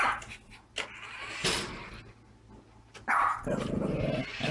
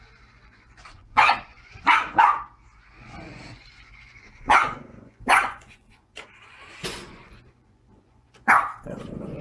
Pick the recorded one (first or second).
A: first